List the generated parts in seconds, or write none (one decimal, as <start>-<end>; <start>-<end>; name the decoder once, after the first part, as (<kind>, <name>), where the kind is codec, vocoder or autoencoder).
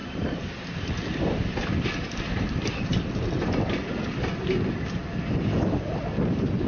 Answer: 0.0-2.9 (vocoder, BigVGAN v2)